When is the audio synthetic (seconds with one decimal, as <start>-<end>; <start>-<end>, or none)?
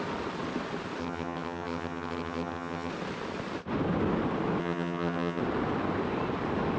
1.0-2.9; 4.6-5.4